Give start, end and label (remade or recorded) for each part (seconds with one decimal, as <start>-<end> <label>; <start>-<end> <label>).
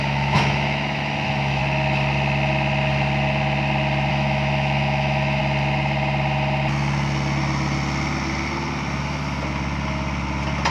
0.0-1.6 remade; 1.6-4.1 recorded; 4.1-5.4 remade; 5.4-10.7 recorded